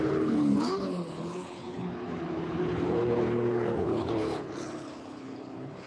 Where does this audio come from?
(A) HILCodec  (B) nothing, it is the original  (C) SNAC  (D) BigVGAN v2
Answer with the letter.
A